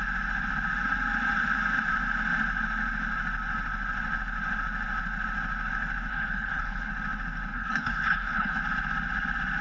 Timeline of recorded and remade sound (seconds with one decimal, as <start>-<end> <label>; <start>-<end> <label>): 0.0-6.1 recorded; 6.1-6.9 remade; 6.9-7.5 recorded; 7.5-8.6 remade; 8.6-9.6 recorded